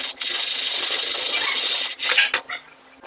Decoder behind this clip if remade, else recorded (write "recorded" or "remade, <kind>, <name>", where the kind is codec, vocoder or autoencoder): recorded